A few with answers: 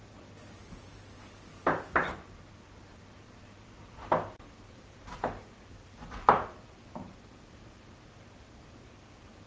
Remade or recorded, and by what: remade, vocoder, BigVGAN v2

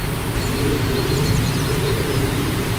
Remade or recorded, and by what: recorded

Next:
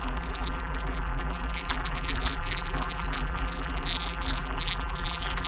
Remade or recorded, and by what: remade, vocoder, BigVGAN v2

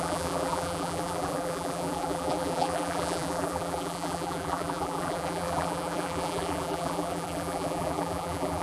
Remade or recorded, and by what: remade, vocoder, BigVGAN v2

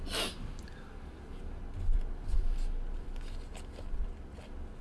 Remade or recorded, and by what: recorded